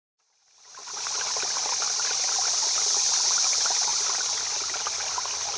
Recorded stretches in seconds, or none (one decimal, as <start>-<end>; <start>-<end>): 0.0-5.6